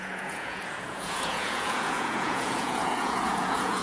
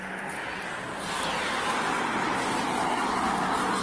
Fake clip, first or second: first